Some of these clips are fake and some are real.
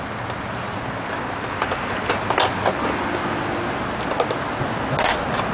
real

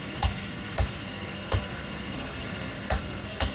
fake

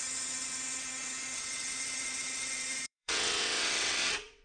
fake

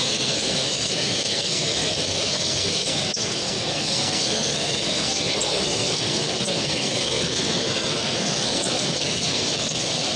fake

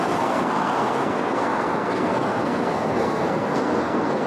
fake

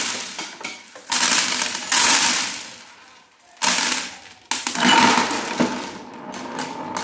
real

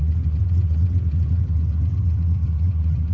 fake